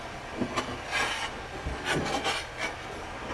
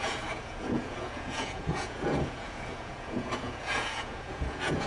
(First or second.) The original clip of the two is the first